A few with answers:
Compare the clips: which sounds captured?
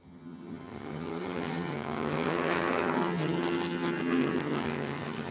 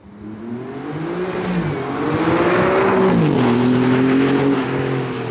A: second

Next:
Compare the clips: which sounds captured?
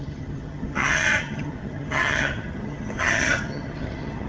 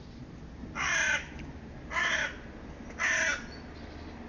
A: second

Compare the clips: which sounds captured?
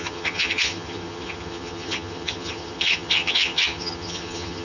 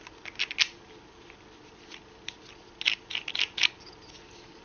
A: second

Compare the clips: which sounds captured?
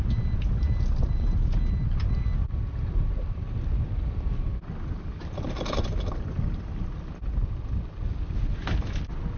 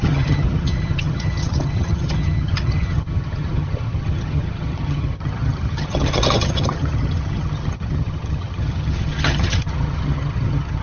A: first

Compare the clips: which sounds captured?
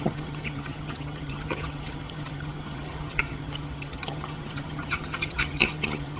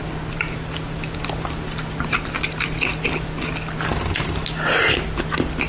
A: second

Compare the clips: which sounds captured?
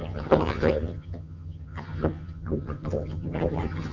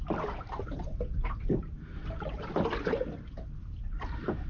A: second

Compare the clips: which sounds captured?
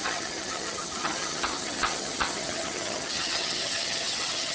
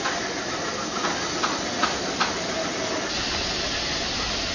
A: second